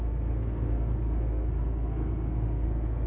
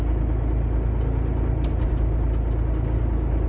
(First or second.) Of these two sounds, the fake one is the first